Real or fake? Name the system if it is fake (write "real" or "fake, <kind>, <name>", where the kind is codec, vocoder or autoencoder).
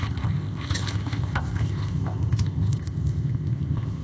fake, codec, ZipCodec